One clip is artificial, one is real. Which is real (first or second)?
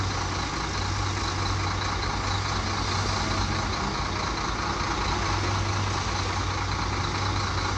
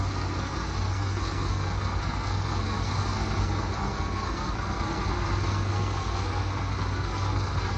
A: first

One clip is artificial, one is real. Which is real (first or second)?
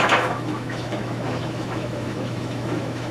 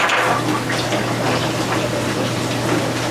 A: second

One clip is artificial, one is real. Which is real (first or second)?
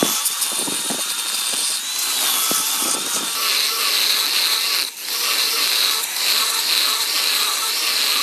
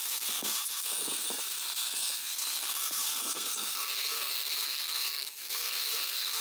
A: first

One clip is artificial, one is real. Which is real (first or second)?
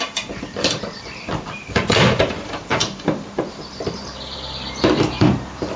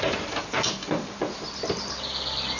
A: second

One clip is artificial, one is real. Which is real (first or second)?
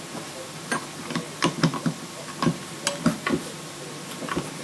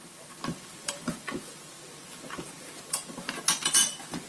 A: first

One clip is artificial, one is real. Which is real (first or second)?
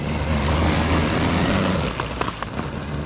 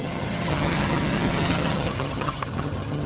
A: first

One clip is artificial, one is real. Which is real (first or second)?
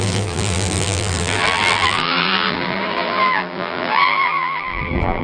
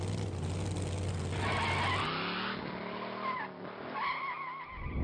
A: second